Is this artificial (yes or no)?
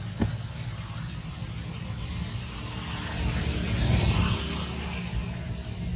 no